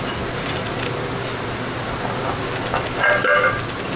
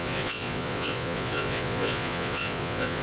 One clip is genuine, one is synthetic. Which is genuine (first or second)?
first